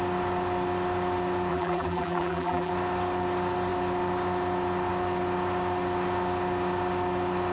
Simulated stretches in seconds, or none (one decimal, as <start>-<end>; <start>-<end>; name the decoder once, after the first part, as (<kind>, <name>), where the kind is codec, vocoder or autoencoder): 1.5-2.7 (vocoder, BigVGAN v2)